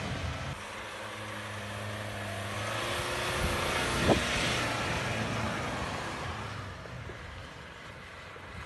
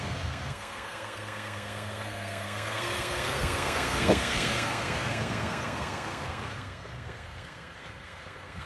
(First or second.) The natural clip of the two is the first